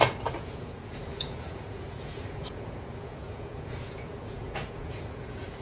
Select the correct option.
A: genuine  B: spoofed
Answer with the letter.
B